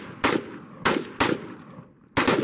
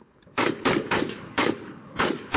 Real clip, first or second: first